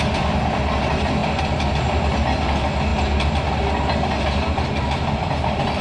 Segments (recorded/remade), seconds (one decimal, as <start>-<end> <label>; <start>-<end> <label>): 0.0-5.8 recorded

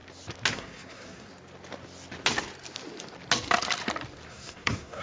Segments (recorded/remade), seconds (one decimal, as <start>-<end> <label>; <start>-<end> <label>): 0.0-0.5 recorded; 0.5-1.3 remade; 1.3-4.3 recorded; 4.3-5.0 remade

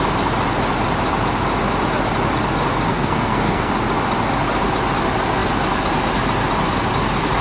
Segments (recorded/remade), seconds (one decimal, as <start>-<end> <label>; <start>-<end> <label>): 0.0-2.9 recorded; 2.9-3.7 remade; 3.7-7.4 recorded

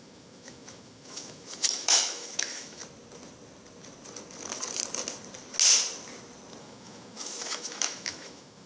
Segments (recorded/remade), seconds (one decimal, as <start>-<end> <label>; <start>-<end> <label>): 0.0-2.8 remade; 2.8-6.6 recorded; 6.6-8.7 remade